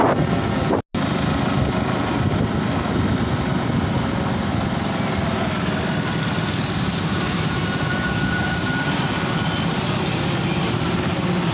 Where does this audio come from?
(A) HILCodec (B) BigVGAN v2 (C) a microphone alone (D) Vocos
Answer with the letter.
C